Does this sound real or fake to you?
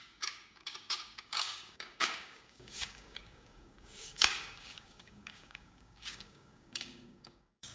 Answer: fake